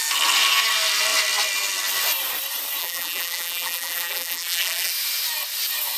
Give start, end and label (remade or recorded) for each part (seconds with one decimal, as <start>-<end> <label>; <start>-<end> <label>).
0.0-2.8 recorded; 2.8-4.9 remade; 4.9-6.0 recorded